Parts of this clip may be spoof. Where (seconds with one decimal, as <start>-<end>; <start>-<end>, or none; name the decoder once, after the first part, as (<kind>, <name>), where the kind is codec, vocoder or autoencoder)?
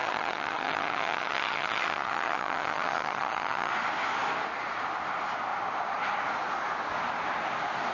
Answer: 0.0-3.7 (vocoder, HiFi-GAN)